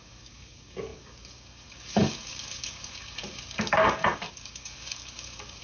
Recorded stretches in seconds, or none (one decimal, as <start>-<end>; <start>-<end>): none